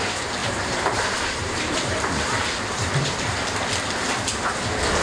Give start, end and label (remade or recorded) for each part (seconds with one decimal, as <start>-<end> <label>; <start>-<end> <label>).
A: 0.0-0.4 recorded; 0.4-3.4 remade; 3.4-5.0 recorded